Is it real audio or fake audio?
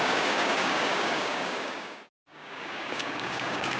fake